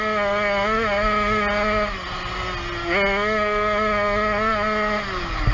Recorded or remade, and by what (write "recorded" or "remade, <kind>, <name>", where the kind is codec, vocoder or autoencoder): recorded